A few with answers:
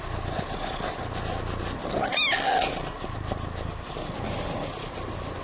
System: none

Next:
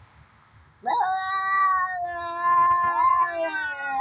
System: none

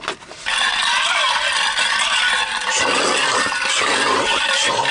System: vocoder, BigVGAN v2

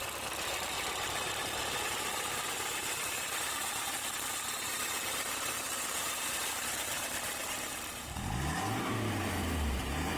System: vocoder, BigVGAN v2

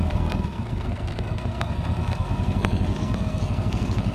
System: codec, SNAC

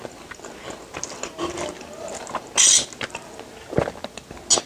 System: none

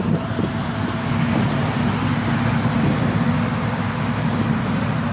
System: none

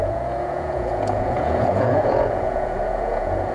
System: vocoder, Vocos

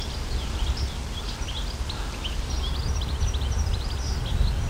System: none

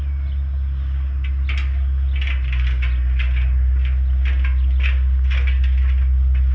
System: none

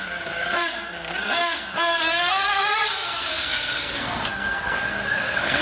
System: codec, SNAC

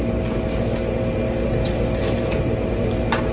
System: none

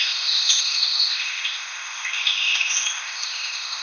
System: codec, ZipCodec